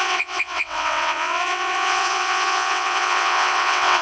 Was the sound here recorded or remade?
remade